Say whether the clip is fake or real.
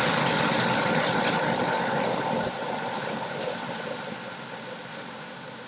real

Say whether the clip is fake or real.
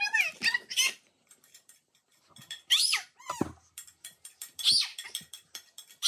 fake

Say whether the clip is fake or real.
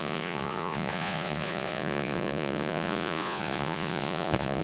fake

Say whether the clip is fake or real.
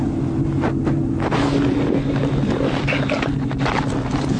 real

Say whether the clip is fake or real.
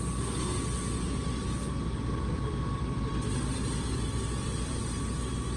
real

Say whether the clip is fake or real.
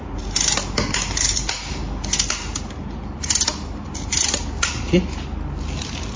real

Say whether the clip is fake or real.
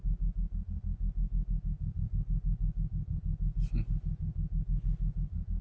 real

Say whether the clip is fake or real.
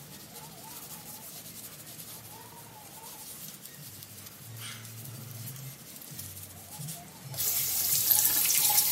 real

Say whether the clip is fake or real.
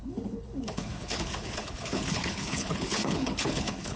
fake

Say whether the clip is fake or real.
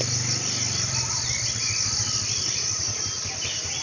real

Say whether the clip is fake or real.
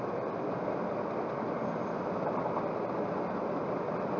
real